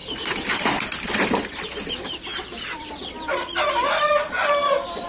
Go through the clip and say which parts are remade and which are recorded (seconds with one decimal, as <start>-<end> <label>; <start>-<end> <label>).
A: 0.0-1.9 recorded; 1.9-5.1 remade